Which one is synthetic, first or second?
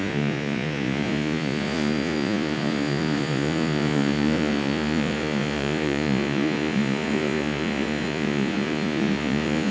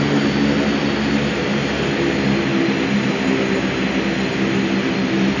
first